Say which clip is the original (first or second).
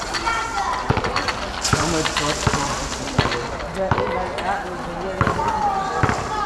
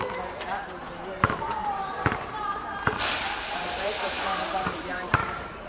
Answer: first